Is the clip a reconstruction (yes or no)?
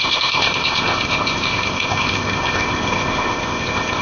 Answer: yes